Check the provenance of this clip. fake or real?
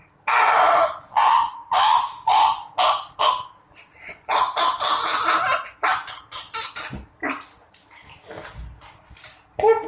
real